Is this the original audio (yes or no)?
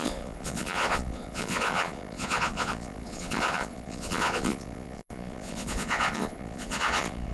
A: no